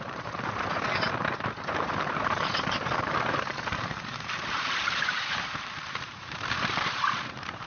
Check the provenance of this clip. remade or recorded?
remade